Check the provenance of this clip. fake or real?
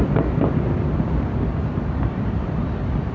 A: fake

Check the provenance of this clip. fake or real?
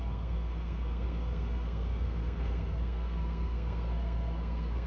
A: fake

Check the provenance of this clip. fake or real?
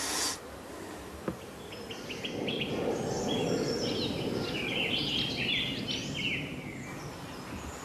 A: real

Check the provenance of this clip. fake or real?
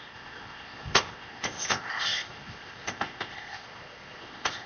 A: fake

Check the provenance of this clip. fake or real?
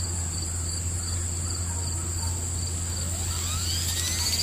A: real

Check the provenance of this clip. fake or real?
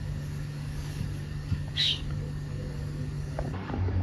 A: fake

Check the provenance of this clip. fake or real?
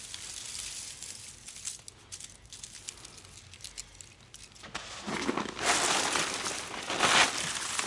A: real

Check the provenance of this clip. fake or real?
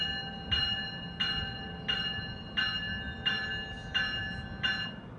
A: real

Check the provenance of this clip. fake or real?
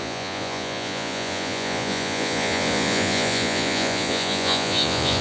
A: fake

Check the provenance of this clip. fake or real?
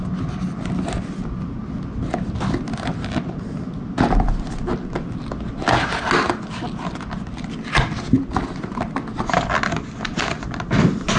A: real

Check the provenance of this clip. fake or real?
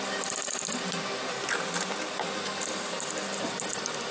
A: real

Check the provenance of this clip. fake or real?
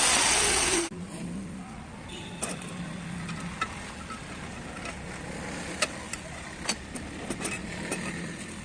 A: real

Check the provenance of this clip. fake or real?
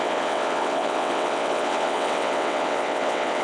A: fake